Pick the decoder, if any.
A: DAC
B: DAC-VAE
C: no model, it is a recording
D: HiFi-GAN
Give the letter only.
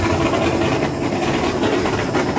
C